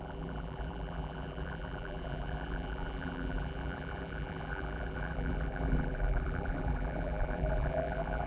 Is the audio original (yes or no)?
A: no